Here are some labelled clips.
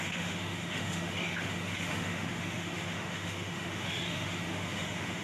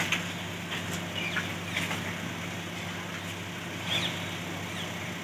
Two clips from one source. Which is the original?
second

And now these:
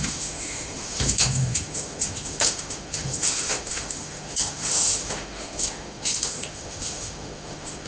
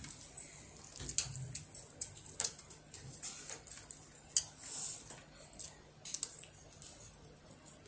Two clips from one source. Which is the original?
second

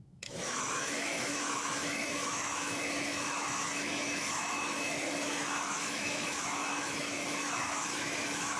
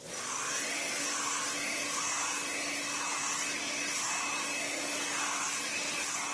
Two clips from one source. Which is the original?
second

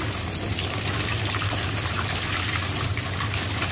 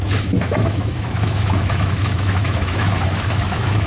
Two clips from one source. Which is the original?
first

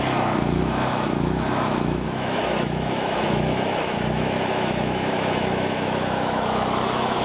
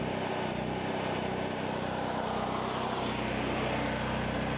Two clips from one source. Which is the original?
second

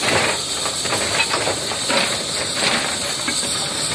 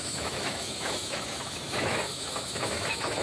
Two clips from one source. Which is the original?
first